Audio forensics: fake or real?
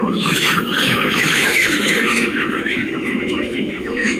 fake